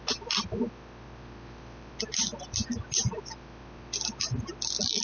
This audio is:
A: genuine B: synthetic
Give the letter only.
A